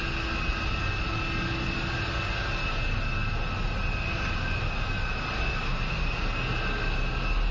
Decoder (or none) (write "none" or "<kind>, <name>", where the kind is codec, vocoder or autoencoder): none